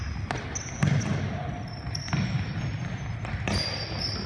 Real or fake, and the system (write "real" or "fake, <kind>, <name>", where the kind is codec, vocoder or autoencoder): real